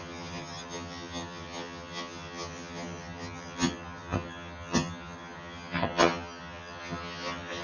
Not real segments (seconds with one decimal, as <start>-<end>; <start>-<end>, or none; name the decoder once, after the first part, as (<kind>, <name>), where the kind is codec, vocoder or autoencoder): 0.0-7.6 (vocoder, HiFi-GAN)